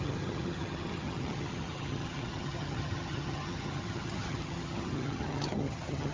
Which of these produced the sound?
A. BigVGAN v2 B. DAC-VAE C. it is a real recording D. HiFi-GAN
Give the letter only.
D